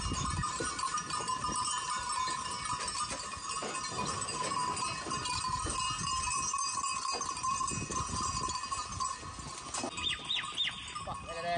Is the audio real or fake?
real